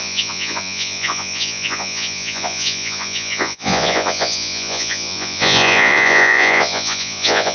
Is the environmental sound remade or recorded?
remade